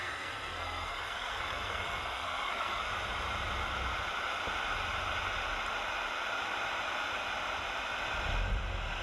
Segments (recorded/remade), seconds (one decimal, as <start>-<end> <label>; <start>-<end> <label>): 0.0-2.9 remade; 2.9-9.0 recorded